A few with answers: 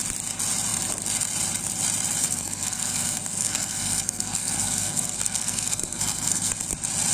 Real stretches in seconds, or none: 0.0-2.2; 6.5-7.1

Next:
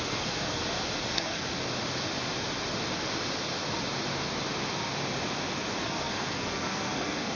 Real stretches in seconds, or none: 0.6-1.1; 1.5-5.8